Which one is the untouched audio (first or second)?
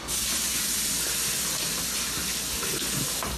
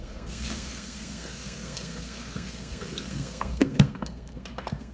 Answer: first